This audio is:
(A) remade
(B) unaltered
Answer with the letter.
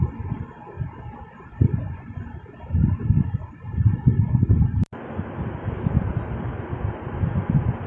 B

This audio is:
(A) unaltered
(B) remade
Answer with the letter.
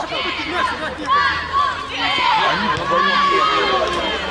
A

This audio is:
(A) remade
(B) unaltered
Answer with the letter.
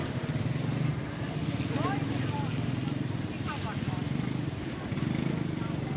B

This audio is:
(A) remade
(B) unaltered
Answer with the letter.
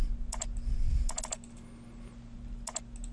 B